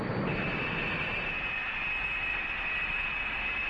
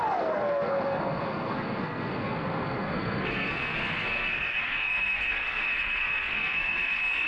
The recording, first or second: first